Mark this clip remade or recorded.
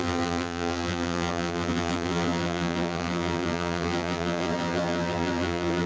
remade